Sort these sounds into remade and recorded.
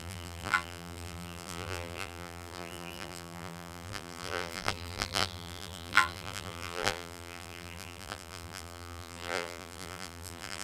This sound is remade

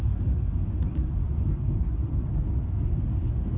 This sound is recorded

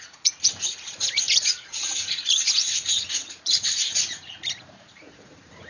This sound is remade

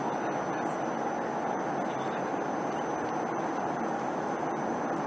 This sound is recorded